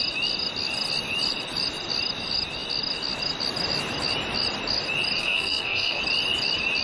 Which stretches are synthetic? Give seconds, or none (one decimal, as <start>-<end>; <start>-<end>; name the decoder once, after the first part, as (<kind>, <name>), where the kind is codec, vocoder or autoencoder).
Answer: 5.2-6.0 (codec, SNAC)